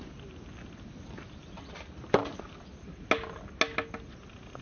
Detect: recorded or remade recorded